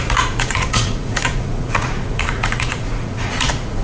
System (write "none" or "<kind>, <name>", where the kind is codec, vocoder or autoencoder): vocoder, Vocos